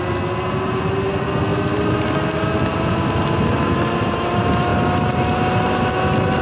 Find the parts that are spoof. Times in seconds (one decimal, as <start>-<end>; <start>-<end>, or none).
none